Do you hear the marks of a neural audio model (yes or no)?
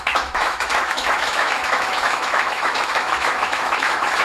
yes